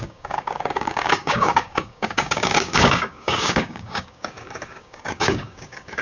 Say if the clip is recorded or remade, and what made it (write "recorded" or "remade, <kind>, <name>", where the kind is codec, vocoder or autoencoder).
remade, codec, DAC